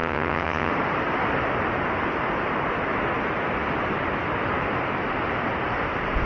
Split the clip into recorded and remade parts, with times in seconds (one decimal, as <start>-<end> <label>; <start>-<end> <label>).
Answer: 0.0-0.7 remade; 0.7-6.3 recorded